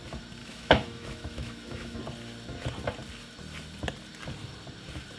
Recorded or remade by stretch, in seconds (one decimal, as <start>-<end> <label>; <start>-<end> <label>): 0.0-0.4 recorded; 0.4-2.0 remade; 2.0-5.2 recorded